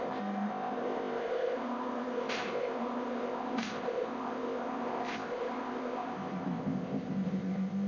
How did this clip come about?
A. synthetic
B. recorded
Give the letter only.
A